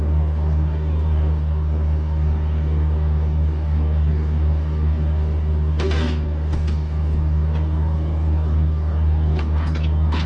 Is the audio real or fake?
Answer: fake